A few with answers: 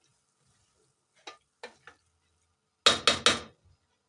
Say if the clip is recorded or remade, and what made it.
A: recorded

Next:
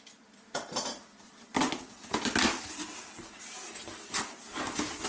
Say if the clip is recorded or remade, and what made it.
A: recorded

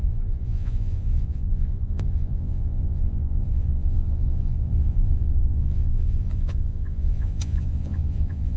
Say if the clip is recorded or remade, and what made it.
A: remade, vocoder, Vocos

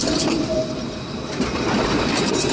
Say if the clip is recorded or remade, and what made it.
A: recorded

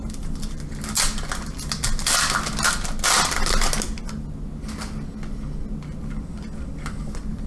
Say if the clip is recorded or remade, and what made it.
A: recorded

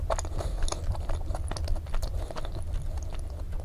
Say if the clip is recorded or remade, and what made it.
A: recorded